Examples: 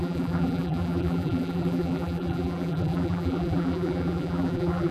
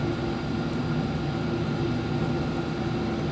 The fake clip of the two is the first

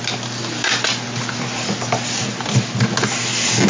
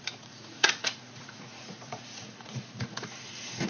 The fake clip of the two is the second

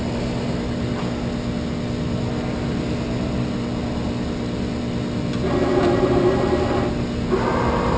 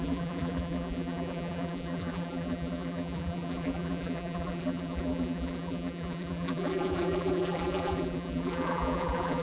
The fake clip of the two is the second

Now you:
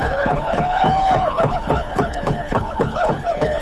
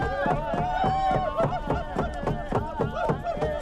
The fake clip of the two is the first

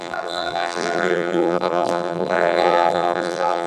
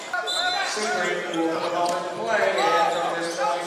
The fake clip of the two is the first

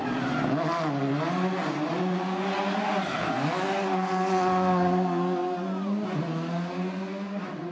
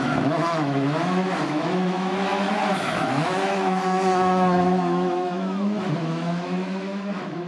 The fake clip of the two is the second